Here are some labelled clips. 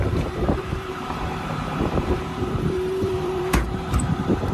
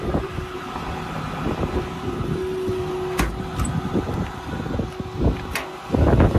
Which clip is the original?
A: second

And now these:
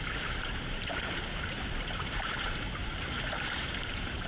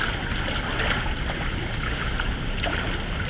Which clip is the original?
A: second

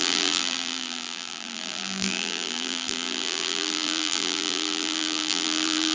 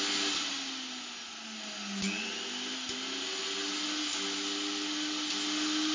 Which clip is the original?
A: second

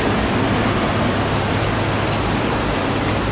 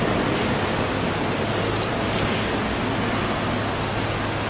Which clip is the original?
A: second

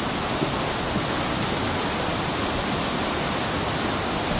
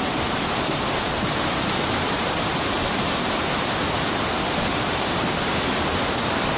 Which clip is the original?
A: first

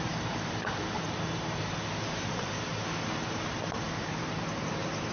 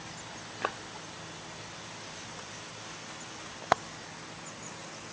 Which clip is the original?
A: second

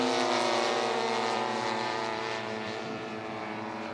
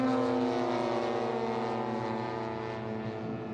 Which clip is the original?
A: second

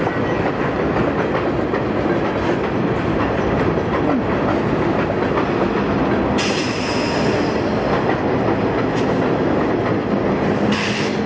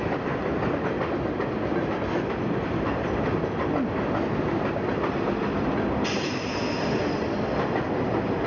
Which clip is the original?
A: first